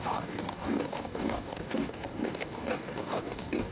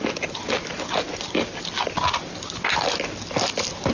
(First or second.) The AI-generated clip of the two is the first